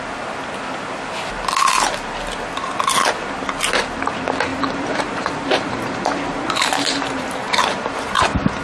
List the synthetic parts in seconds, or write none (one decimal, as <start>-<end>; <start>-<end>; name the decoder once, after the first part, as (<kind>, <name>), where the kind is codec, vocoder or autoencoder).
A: 4.5-8.2 (vocoder, BigVGAN v2)